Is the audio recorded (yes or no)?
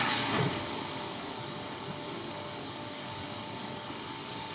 no